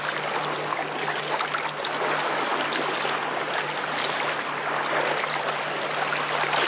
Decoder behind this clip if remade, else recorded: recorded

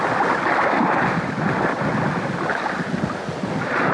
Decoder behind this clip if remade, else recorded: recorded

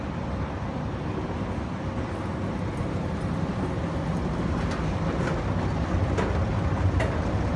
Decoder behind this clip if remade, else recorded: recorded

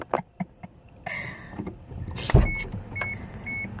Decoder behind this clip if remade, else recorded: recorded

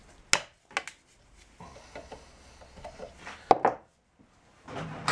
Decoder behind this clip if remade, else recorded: recorded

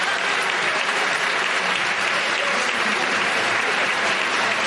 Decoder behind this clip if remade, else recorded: remade, vocoder, BigVGAN v2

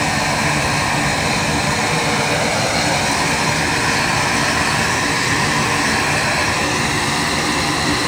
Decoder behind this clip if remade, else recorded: remade, vocoder, BigVGAN v2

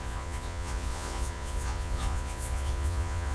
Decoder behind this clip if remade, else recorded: remade, vocoder, Vocos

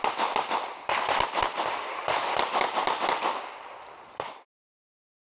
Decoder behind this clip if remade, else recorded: recorded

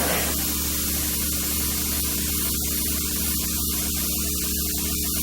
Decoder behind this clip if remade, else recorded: recorded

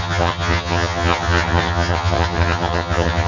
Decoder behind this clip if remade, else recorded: remade, vocoder, HiFi-GAN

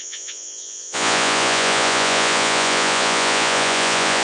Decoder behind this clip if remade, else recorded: remade, vocoder, Vocos